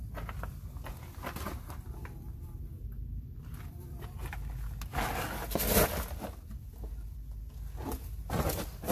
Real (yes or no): yes